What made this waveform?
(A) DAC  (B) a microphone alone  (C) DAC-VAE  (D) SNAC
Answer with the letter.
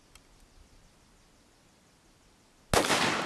B